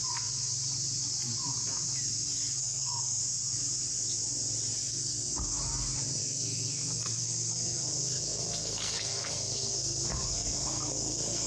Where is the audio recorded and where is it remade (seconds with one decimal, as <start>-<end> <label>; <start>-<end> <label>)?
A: 0.0-2.6 recorded; 2.6-3.2 remade; 3.2-4.8 recorded; 4.8-5.6 remade; 5.6-6.2 recorded; 6.2-11.5 remade